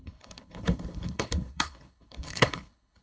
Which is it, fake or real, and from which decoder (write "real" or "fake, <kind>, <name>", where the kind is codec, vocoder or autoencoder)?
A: fake, codec, HILCodec